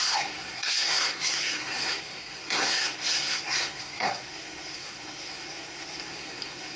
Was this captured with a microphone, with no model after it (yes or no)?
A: no